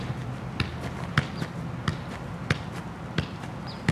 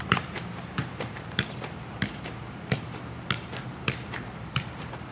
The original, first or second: first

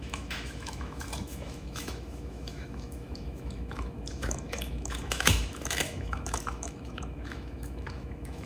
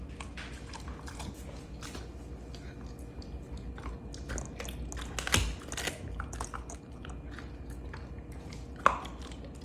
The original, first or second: second